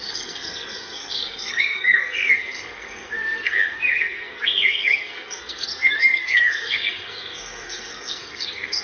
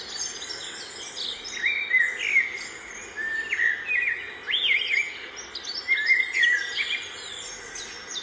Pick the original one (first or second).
second